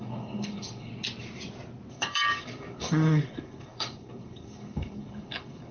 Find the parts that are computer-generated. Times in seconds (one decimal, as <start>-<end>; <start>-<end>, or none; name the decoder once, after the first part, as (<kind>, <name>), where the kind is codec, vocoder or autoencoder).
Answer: 0.0-0.9 (codec, DAC); 1.9-5.7